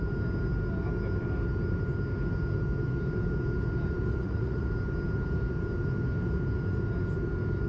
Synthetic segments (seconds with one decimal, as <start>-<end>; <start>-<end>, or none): 4.1-4.7